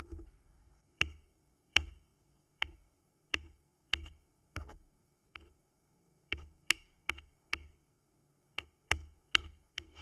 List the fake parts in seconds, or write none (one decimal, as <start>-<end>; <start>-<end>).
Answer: 0.0-10.0